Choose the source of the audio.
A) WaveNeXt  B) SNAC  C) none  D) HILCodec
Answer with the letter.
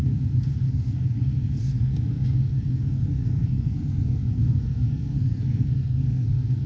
B